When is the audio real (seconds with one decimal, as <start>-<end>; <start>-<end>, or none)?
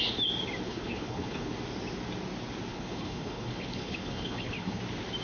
0.0-0.7; 1.5-2.7; 4.8-5.2